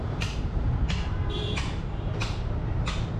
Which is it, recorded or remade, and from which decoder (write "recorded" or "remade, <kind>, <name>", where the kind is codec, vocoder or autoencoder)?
remade, vocoder, BigVGAN v2